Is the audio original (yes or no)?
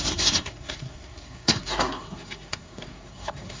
no